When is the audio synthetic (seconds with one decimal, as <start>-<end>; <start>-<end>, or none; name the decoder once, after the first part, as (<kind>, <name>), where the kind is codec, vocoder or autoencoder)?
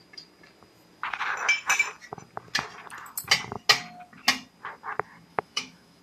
5.3-6.0 (autoencoder, DAC-VAE)